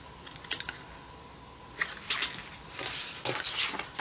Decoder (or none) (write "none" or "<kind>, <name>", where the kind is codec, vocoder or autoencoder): none